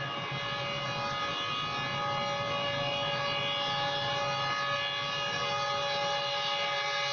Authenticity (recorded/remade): recorded